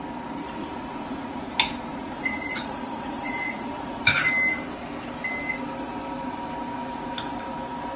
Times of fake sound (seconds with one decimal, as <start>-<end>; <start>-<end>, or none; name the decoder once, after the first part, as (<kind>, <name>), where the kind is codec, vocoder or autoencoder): 0.6-1.5 (vocoder, Vocos); 1.9-4.2